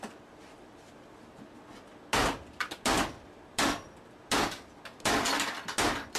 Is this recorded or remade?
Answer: recorded